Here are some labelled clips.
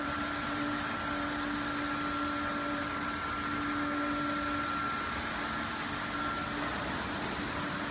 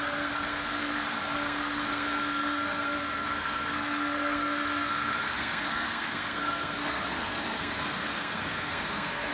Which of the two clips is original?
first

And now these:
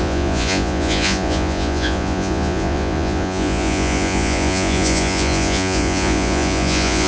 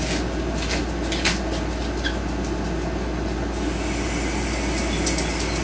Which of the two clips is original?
second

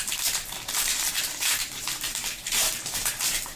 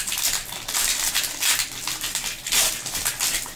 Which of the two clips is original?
second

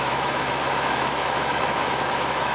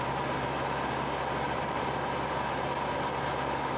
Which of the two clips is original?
second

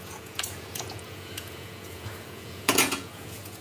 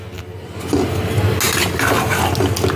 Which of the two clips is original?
second